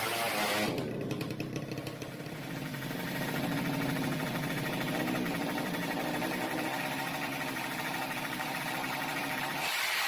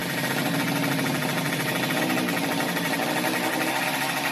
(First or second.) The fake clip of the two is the first